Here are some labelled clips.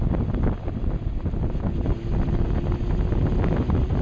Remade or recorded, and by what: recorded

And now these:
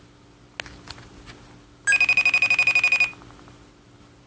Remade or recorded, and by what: recorded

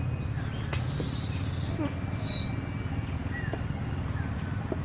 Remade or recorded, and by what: recorded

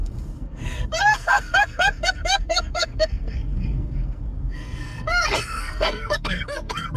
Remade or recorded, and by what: remade, codec, SNAC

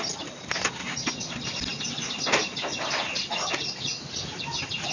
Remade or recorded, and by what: recorded